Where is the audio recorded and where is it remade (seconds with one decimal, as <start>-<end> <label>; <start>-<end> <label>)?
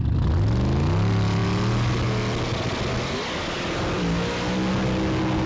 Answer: 0.0-5.5 recorded